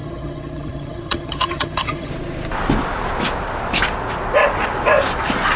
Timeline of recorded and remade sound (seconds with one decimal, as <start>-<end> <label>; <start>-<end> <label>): 0.0-2.1 remade; 2.1-5.6 recorded